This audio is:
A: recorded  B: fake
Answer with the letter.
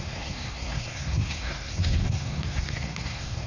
B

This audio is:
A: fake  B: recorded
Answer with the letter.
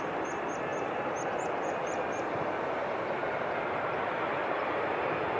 B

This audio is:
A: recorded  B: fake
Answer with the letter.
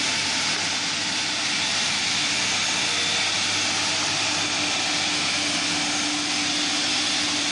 A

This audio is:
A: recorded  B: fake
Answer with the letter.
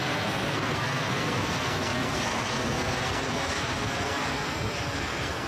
B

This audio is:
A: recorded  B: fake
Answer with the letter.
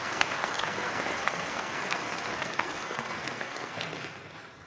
B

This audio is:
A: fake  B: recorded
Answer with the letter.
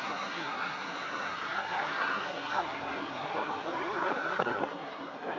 A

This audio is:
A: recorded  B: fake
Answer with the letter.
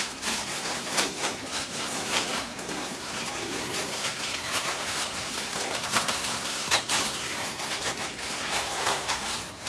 B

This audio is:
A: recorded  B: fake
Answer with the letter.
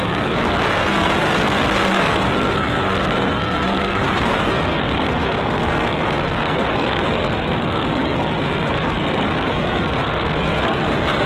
B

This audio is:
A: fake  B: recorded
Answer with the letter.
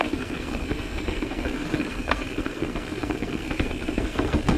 A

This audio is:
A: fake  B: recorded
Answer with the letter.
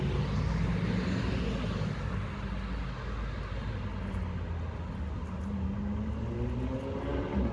B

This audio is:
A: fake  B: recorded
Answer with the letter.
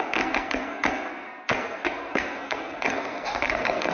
A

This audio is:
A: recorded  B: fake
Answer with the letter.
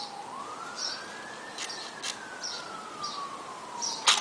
A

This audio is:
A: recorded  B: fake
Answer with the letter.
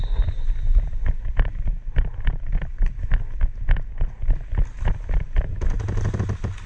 A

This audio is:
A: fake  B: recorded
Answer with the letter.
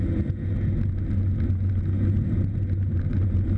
B